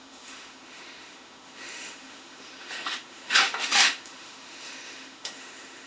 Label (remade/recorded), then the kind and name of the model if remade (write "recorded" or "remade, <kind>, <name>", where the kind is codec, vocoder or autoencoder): remade, autoencoder, DAC-VAE